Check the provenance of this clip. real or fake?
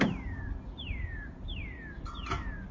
real